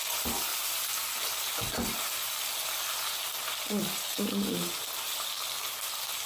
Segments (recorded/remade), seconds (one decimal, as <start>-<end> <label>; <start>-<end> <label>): 0.0-6.3 recorded